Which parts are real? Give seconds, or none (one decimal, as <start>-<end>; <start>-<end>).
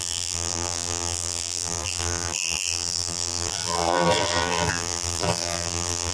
none